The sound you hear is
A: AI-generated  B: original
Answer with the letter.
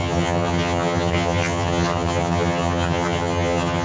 A